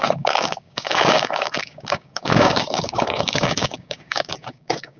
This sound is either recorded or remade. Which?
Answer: remade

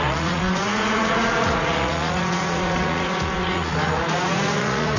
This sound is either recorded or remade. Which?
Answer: remade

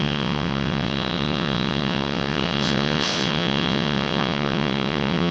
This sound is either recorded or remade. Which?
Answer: remade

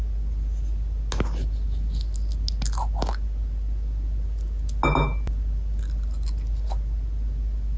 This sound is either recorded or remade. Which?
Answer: recorded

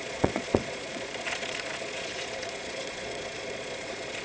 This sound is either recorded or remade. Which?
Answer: remade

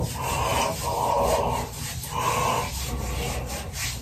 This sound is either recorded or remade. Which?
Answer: recorded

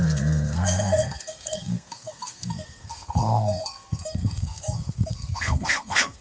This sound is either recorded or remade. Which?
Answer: remade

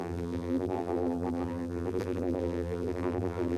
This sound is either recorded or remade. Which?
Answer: remade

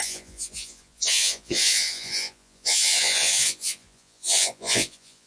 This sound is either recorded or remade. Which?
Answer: remade